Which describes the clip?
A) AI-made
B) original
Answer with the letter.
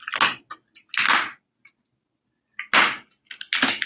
B